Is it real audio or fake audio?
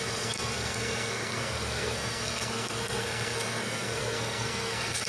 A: fake